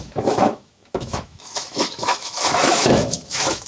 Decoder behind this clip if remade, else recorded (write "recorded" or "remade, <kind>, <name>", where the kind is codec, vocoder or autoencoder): remade, autoencoder, DAC-VAE